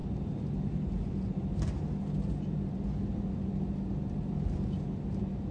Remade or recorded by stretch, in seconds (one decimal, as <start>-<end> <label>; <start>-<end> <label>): 0.0-5.5 recorded

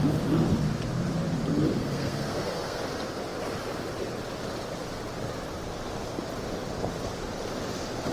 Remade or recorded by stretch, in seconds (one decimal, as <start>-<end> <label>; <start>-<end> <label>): 0.0-1.8 recorded; 1.8-2.8 remade; 2.8-8.1 recorded

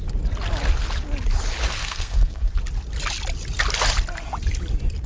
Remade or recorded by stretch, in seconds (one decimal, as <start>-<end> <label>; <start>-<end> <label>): 0.0-1.8 recorded; 1.8-2.5 remade; 2.5-5.1 recorded

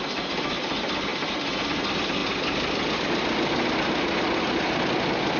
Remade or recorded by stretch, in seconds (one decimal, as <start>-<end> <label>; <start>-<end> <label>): 0.0-5.4 recorded

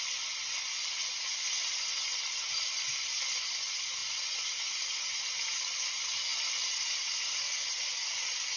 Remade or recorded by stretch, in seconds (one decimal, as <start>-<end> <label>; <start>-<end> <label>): 0.0-8.6 recorded

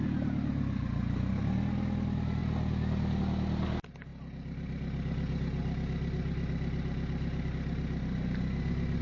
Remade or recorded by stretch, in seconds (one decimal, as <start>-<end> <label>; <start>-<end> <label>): 0.0-9.0 recorded